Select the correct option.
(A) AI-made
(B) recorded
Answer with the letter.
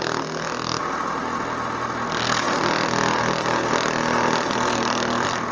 B